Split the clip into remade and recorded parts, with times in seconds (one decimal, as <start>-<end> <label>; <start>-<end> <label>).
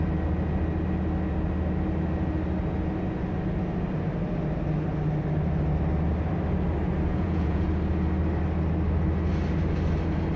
0.0-7.1 recorded; 7.1-7.7 remade; 7.7-10.4 recorded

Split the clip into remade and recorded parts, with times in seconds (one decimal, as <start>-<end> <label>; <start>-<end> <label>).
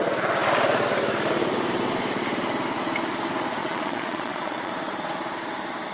0.0-3.6 recorded; 3.6-4.7 remade; 4.7-5.9 recorded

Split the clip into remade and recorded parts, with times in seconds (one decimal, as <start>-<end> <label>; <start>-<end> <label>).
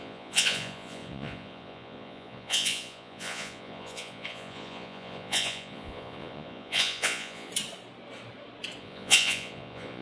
0.0-7.5 remade; 7.5-8.8 recorded; 8.8-10.0 remade